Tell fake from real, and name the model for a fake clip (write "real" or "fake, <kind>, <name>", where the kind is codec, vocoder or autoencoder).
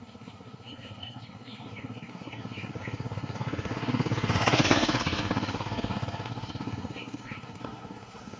fake, codec, SNAC